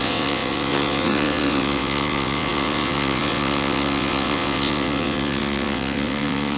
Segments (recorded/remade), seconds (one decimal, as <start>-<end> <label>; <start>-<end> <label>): 0.0-6.6 remade

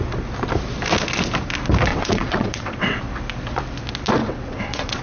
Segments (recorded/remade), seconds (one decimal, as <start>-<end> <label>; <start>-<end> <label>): 0.0-1.9 recorded; 1.9-3.0 remade; 3.0-4.2 recorded; 4.2-5.0 remade